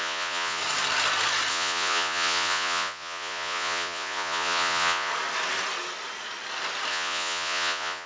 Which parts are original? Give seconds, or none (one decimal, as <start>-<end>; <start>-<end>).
0.6-1.5; 5.1-6.9

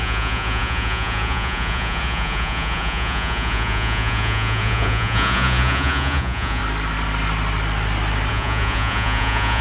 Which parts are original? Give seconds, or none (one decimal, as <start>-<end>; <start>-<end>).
6.6-8.3

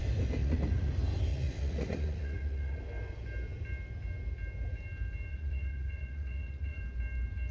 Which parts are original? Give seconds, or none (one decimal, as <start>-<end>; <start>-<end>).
0.0-0.4; 0.9-1.3; 2.8-5.3; 6.8-7.5